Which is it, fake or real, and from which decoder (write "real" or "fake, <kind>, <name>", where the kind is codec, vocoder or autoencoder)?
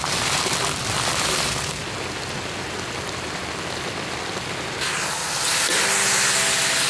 real